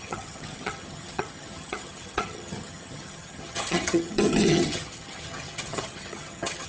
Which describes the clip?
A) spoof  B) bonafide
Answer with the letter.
A